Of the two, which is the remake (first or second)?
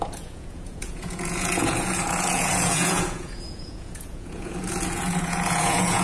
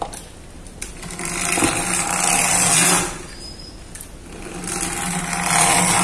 first